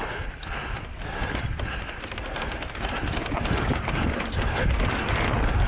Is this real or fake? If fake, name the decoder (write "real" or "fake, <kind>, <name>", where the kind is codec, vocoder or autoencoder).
real